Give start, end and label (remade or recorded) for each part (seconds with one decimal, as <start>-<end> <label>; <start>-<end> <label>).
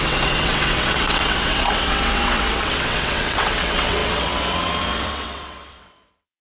0.0-6.4 remade